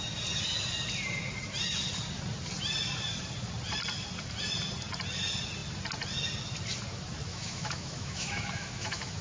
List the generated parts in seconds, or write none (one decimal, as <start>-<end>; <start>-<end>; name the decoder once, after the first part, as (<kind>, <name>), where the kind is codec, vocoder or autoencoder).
7.3-9.2 (autoencoder, DAC-VAE)